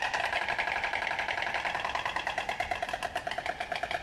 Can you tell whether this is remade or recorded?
recorded